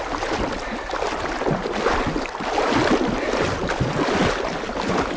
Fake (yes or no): no